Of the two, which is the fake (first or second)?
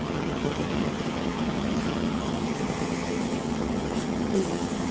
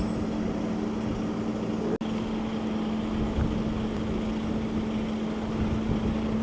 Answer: first